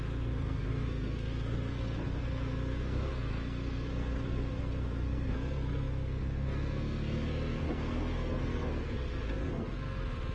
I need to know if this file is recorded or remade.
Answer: remade